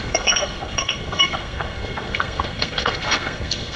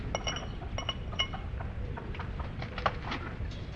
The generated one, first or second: first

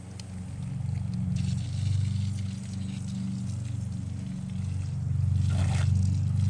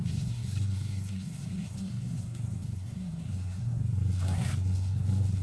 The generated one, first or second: second